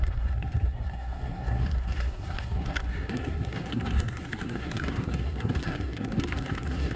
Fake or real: fake